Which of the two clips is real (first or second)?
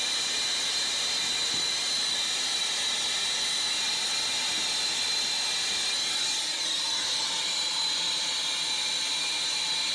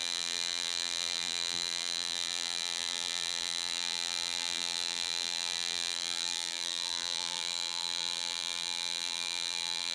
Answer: first